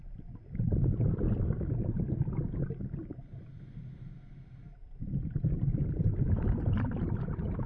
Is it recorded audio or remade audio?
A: recorded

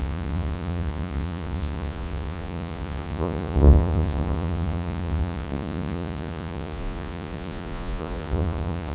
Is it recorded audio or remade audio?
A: remade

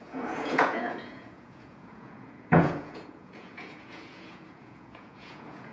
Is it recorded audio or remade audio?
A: remade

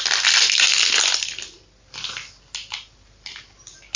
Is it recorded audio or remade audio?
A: recorded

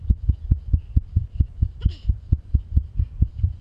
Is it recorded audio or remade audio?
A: recorded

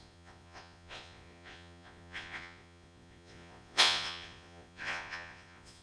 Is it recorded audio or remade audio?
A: remade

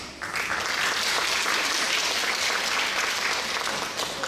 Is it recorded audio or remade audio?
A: recorded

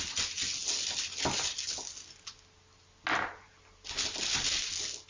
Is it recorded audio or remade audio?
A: recorded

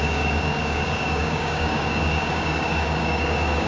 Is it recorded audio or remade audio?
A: remade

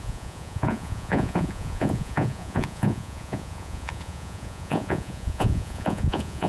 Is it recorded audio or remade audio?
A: remade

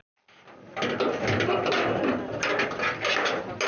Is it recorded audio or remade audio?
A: recorded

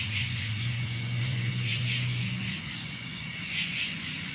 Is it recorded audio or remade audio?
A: remade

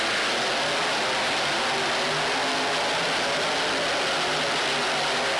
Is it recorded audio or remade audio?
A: recorded